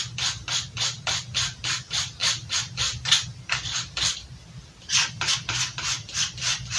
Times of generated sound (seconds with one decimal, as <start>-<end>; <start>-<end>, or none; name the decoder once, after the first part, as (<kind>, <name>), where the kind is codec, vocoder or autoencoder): 2.2-5.3 (vocoder, BigVGAN v2)